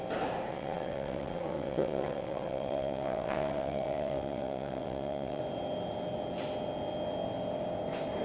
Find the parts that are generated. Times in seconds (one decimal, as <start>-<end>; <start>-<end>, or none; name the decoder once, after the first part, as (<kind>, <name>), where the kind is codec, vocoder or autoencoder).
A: 0.5-5.4 (vocoder, WaveNeXt)